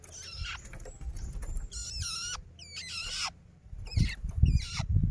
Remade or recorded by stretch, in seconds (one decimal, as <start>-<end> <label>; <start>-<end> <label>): 0.0-5.1 recorded